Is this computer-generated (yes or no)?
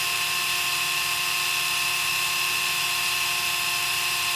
no